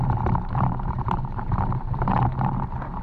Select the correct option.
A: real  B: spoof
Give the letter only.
B